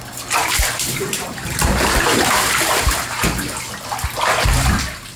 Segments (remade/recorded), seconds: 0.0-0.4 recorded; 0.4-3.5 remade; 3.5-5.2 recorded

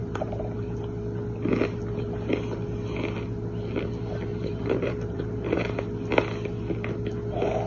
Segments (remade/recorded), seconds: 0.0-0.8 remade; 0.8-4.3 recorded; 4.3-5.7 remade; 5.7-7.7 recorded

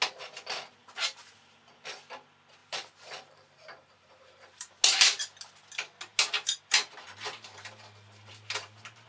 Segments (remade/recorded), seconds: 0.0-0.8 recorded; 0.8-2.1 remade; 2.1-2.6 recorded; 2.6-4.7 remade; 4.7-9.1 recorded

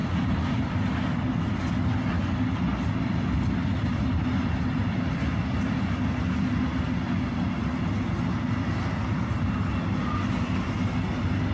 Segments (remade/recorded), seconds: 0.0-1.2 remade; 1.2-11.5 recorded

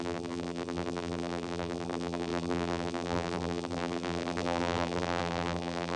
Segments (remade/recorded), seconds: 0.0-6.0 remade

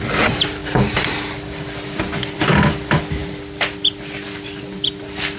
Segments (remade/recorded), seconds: 0.0-0.6 recorded; 0.6-1.2 remade; 1.2-3.2 recorded; 3.2-4.6 remade; 4.6-5.4 recorded